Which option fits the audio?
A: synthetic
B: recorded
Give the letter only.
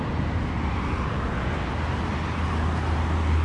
B